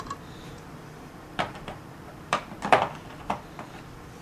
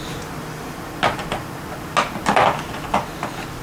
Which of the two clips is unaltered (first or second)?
second